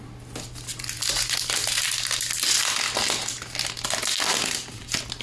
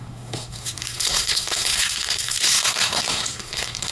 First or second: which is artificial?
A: second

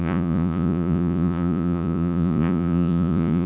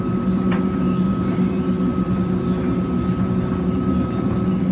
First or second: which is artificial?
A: first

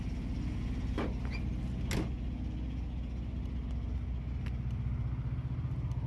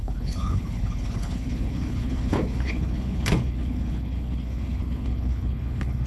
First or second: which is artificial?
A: second